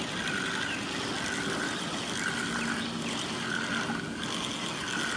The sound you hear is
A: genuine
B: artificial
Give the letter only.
A